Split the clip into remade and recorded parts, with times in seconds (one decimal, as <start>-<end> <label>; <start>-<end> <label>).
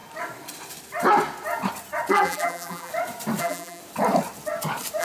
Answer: 0.0-2.1 recorded; 2.1-2.9 remade; 2.9-3.4 recorded; 3.4-3.8 remade; 3.8-5.0 recorded